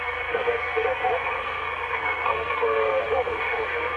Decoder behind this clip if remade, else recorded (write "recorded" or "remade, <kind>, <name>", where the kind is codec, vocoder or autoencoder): remade, codec, SNAC